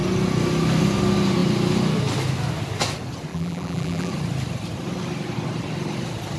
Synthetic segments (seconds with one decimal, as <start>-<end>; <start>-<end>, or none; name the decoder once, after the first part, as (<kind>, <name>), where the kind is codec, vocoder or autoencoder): 3.3-4.1 (vocoder, BigVGAN v2)